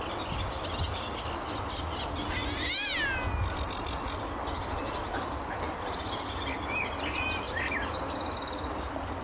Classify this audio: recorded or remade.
recorded